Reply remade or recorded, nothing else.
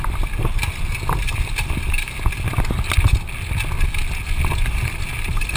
recorded